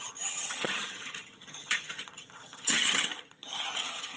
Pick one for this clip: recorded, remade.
remade